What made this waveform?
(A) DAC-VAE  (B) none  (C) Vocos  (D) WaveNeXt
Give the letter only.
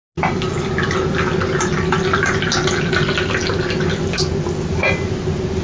B